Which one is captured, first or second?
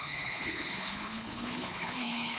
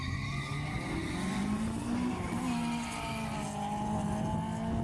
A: second